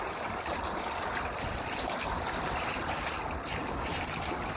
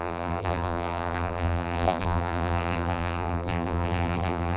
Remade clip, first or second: second